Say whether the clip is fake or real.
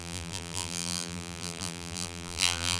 fake